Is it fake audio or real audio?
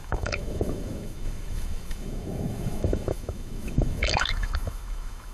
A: fake